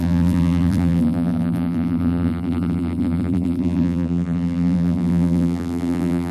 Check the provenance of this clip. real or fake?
fake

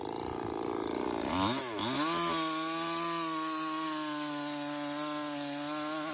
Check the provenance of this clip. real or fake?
real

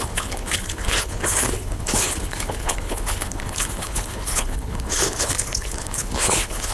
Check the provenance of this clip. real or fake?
fake